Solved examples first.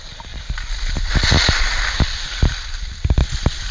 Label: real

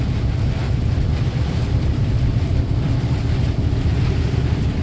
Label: fake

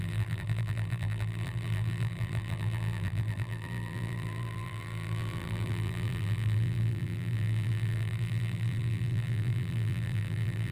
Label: fake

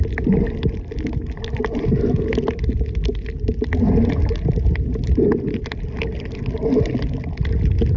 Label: real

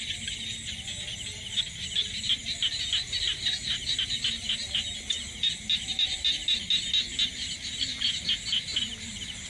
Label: real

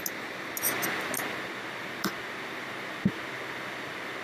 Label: real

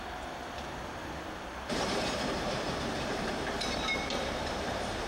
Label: fake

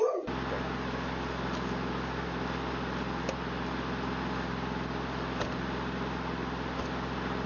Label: real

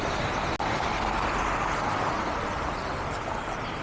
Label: real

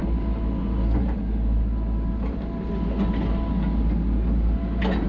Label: real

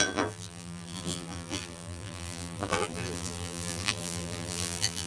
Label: fake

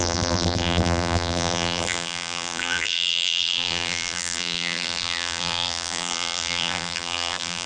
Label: fake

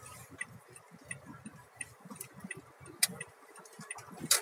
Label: real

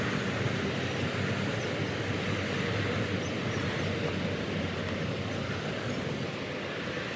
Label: real